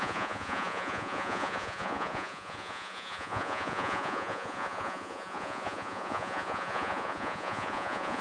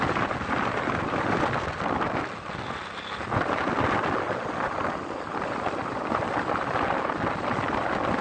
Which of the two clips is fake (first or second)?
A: first